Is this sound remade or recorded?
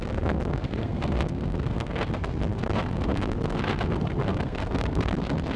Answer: remade